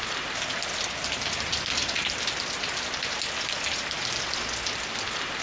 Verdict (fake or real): real